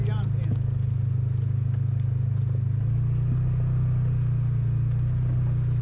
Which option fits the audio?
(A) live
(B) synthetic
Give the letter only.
A